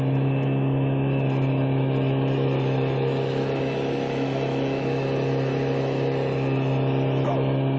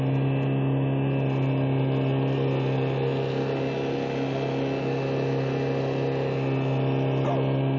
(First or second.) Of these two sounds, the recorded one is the second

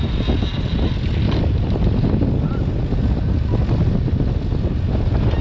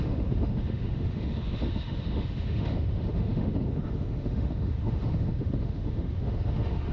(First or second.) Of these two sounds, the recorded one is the first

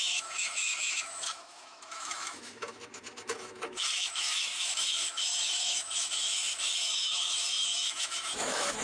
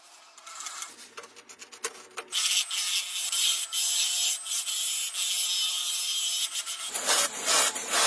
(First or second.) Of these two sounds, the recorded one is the second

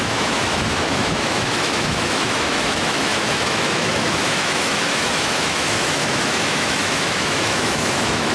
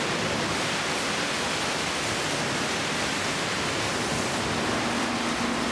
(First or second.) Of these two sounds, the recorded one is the second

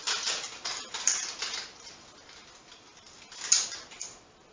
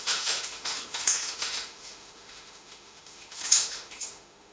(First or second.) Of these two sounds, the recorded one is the first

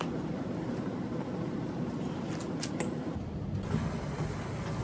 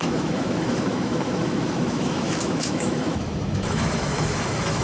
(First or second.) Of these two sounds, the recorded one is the first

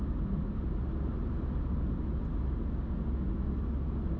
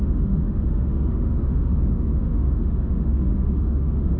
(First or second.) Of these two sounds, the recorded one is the first